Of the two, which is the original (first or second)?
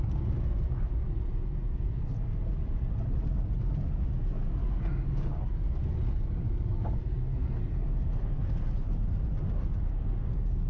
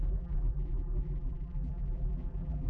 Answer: first